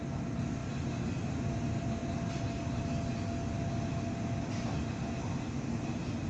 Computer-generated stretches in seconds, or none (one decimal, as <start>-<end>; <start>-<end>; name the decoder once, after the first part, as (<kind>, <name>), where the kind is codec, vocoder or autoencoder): none